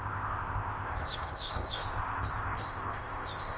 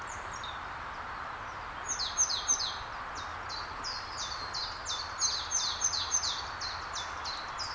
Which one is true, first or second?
second